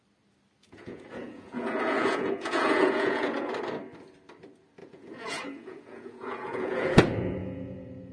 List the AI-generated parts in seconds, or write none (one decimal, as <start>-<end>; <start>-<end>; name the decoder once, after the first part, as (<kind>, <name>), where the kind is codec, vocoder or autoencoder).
0.6-3.5 (vocoder, Vocos); 4.8-7.0; 7.4-8.1